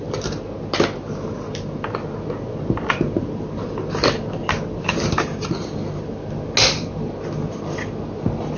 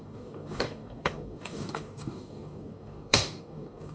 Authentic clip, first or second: first